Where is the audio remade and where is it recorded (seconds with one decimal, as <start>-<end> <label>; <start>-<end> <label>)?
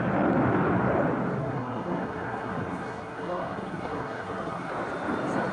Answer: 0.0-1.4 recorded; 1.4-4.7 remade; 4.7-5.5 recorded